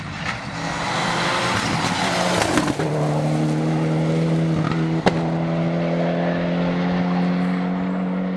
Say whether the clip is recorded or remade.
recorded